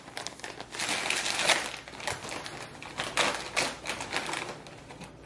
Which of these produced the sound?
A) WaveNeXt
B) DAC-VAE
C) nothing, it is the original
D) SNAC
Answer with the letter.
C